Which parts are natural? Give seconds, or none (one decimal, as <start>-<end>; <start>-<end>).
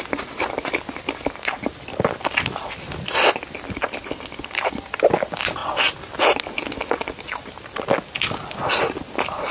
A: 0.0-9.5